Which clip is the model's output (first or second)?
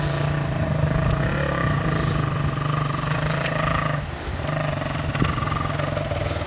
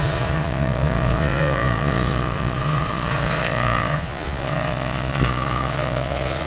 second